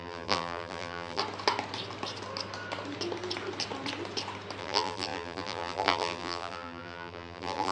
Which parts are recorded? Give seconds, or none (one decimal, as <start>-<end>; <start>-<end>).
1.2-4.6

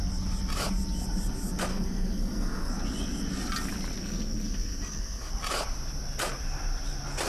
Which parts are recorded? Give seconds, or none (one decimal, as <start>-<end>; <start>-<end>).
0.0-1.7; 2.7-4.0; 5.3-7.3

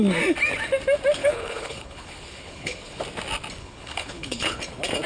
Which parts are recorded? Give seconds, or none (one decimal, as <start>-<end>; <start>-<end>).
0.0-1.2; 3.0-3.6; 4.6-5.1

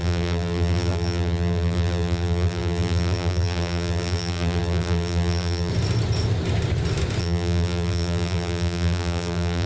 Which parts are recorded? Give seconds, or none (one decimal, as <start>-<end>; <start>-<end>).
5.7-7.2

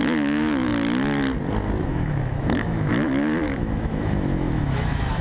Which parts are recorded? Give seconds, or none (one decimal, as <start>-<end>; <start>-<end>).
0.7-1.8

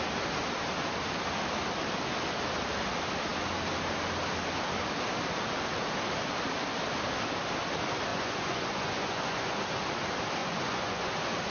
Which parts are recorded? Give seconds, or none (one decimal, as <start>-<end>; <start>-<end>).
0.0-8.1; 9.5-10.4; 11.1-11.5